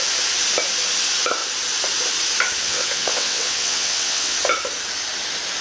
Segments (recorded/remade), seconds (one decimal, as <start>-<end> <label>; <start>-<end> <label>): 0.0-2.6 recorded; 2.6-4.4 remade; 4.4-5.6 recorded